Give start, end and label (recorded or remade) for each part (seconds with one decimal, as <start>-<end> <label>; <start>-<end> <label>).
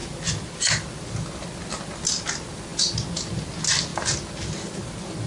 0.0-5.3 recorded